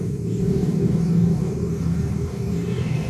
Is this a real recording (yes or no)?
no